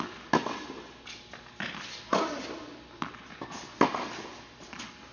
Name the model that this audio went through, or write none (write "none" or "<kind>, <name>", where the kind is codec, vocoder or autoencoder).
none